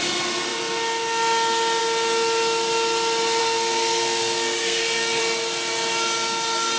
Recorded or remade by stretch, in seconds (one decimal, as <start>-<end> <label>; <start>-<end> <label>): 0.0-3.4 recorded; 3.4-5.2 remade; 5.2-6.8 recorded